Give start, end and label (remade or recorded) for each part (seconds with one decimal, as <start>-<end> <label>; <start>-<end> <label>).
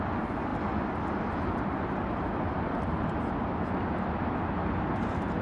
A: 0.0-5.4 recorded